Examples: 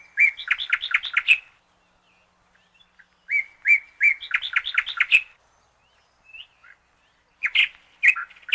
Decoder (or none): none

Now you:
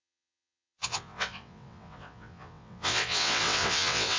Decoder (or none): vocoder, WaveNeXt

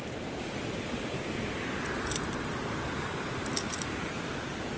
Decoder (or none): none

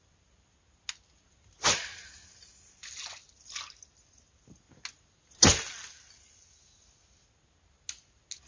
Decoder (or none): none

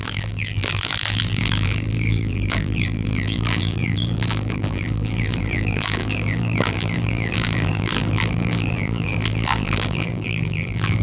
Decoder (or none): vocoder, BigVGAN v2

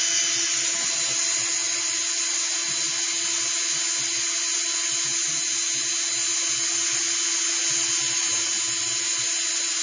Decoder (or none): none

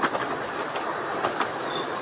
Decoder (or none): vocoder, BigVGAN v2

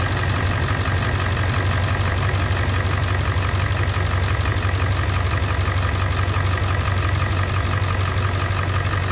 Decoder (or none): none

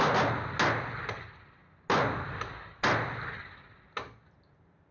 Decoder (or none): none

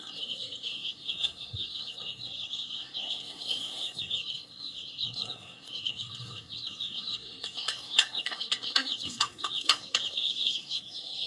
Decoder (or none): codec, SNAC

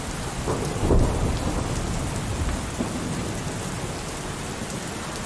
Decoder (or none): none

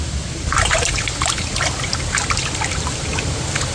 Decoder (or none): none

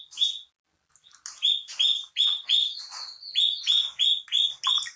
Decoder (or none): none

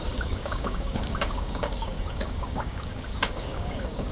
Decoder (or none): codec, DAC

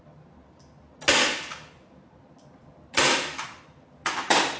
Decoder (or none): none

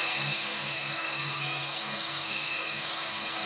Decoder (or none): codec, SNAC